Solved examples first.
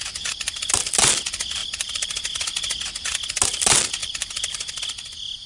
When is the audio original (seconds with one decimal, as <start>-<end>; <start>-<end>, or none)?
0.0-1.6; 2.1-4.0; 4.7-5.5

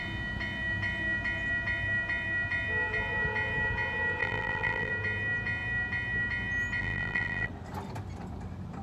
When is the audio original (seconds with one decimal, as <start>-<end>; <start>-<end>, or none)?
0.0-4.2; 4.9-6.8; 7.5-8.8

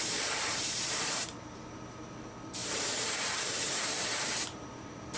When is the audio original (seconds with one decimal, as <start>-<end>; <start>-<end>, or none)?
none

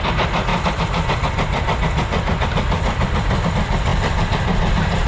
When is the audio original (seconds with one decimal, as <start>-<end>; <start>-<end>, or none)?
0.0-5.1